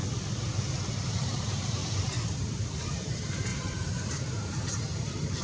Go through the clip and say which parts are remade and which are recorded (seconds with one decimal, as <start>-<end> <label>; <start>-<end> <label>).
0.0-0.9 recorded; 0.9-1.8 remade; 1.8-2.3 recorded; 2.3-5.4 remade